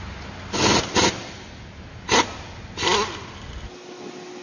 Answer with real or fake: real